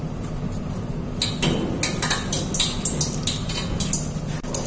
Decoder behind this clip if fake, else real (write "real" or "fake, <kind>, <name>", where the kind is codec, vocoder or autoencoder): real